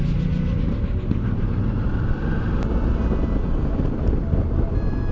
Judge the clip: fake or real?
real